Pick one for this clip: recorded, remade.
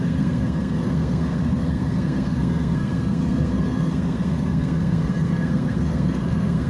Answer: remade